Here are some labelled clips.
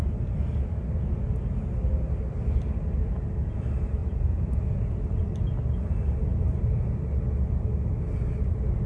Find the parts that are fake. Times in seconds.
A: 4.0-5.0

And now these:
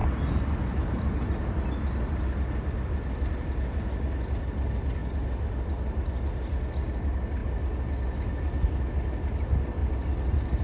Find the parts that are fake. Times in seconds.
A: none

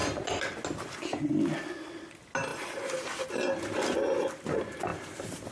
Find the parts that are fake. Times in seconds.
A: none

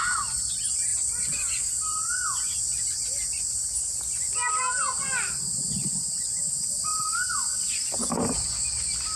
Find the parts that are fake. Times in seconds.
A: 0.9-2.6; 6.9-7.9

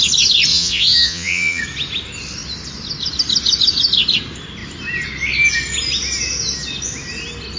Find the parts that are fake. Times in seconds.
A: 0.5-1.6

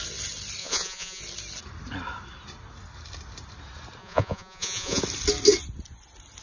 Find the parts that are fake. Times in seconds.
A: 0.6-1.2; 4.0-5.0

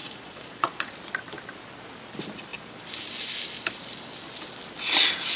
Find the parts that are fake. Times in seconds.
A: 0.0-0.9

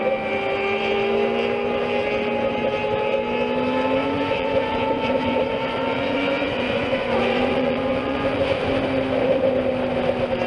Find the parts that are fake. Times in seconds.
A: 4.0-8.7